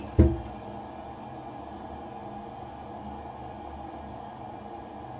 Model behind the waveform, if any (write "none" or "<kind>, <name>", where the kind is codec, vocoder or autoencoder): none